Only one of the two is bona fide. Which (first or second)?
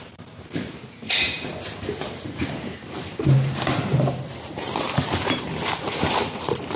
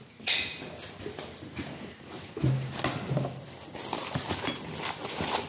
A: second